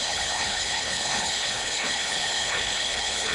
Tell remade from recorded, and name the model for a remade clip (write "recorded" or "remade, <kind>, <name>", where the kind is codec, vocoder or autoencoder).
remade, codec, HILCodec